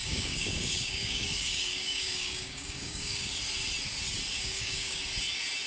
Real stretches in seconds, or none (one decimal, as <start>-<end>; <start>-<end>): 3.4-4.3; 5.0-5.7